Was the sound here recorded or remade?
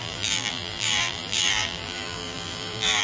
remade